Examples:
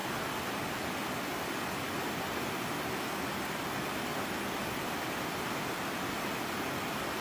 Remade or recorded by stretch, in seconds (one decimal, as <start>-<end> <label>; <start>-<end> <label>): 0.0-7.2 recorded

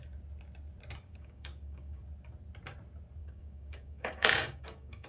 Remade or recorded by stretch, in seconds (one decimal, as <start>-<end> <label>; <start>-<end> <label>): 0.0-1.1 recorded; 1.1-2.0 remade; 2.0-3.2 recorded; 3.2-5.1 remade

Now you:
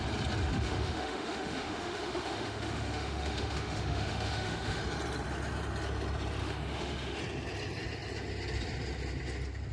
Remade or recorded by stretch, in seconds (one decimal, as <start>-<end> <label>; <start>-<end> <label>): 0.0-0.4 recorded; 0.4-4.8 remade; 4.8-6.4 recorded; 6.4-7.2 remade; 7.2-9.7 recorded

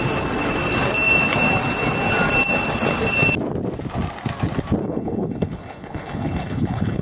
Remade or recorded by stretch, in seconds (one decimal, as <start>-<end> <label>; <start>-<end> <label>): 0.0-4.8 recorded; 4.8-7.0 remade